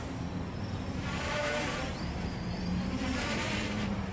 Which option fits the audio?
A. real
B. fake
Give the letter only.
B